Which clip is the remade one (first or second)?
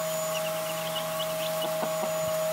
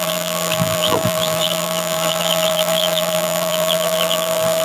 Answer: second